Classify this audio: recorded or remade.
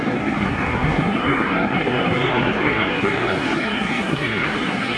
remade